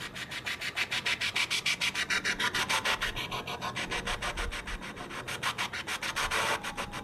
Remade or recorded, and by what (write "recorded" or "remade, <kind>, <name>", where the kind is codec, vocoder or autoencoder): recorded